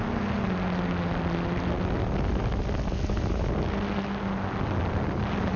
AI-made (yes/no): no